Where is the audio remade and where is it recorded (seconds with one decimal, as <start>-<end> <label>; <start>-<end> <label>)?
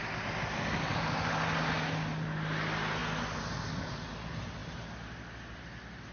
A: 0.0-6.1 recorded